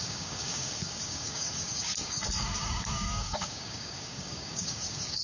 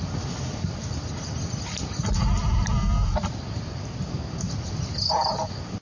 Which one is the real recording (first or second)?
second